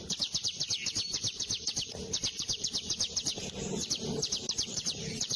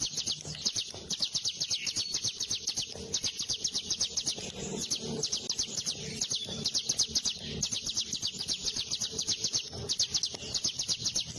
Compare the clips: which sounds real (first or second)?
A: second